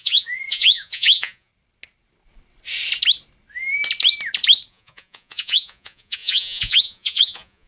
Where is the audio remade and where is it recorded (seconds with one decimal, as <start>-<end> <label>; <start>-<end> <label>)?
0.0-1.5 remade; 1.5-4.7 recorded; 4.7-7.7 remade